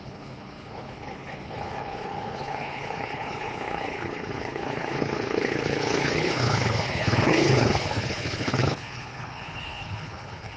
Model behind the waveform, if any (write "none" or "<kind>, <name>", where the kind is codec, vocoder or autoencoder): codec, HILCodec